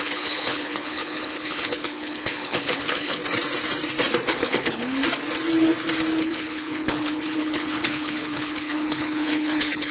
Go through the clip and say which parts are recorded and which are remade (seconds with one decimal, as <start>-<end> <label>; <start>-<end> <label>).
0.0-3.2 remade; 3.2-4.3 recorded; 4.3-5.0 remade; 5.0-6.2 recorded; 6.2-9.9 remade